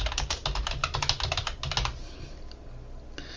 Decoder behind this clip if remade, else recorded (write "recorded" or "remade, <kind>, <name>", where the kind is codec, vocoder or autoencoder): recorded